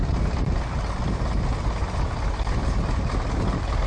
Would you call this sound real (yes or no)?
yes